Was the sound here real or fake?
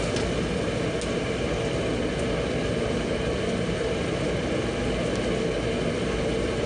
real